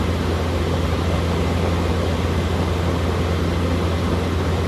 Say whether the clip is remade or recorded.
recorded